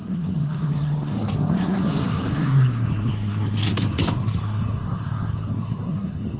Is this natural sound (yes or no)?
no